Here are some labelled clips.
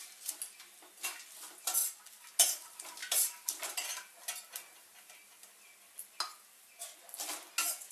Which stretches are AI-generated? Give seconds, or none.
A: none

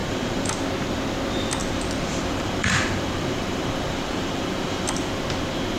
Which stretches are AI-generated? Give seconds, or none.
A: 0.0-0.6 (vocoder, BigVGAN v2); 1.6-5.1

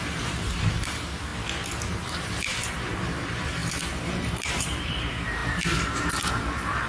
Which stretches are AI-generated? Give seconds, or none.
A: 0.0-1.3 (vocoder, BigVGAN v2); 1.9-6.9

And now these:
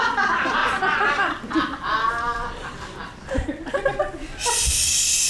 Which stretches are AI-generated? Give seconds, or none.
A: 0.6-3.8 (vocoder, BigVGAN v2)

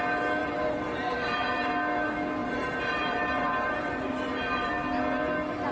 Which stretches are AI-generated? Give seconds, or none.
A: 0.4-1.7 (vocoder, BigVGAN v2); 2.4-4.7